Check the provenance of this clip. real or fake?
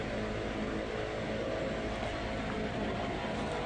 real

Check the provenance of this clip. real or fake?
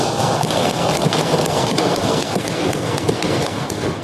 fake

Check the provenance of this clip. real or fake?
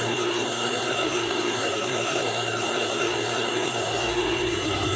fake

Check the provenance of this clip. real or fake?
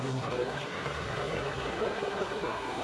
fake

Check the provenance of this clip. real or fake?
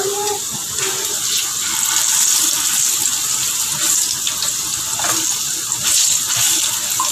real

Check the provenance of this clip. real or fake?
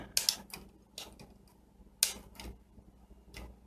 real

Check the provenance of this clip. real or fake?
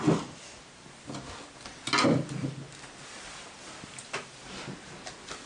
real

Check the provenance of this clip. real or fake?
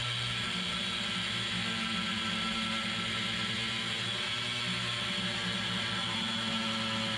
real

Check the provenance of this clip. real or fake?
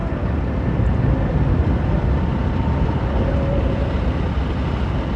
real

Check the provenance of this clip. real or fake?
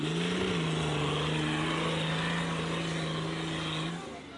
real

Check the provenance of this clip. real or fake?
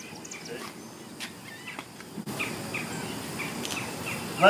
real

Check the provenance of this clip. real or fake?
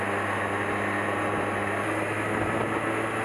real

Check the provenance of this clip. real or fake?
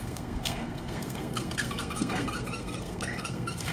fake